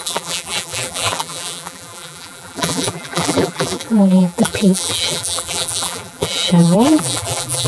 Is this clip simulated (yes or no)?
yes